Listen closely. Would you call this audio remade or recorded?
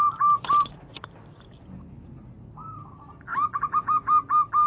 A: recorded